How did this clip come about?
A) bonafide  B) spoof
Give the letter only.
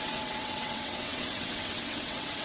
B